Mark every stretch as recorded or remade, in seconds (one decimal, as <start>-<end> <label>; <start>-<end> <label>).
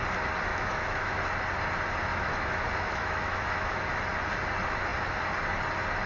0.0-0.5 recorded; 0.5-1.2 remade; 1.2-2.1 recorded; 2.1-4.0 remade; 4.0-6.1 recorded